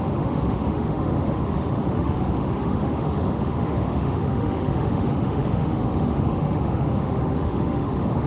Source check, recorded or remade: remade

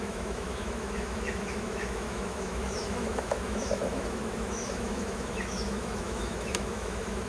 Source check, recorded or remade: remade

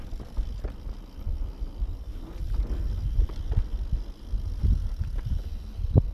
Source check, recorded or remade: recorded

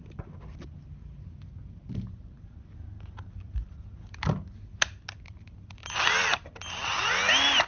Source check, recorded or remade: recorded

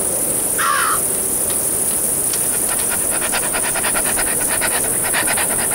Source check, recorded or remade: recorded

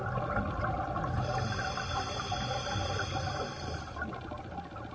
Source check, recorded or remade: recorded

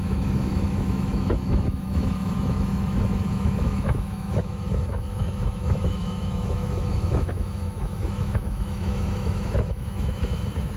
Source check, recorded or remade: remade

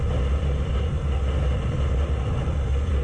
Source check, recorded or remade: recorded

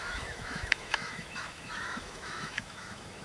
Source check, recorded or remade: remade